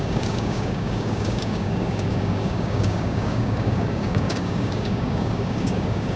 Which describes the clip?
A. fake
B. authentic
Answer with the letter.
A